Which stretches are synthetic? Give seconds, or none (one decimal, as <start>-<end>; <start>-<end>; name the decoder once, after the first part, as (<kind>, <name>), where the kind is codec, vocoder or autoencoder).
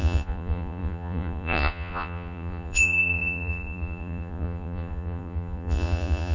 0.0-6.3 (vocoder, Vocos)